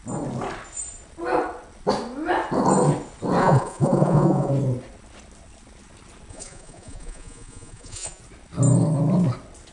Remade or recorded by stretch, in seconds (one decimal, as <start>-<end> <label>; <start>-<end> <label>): 0.0-3.4 recorded; 3.4-4.5 remade; 4.5-6.3 recorded; 6.3-8.2 remade; 8.2-9.7 recorded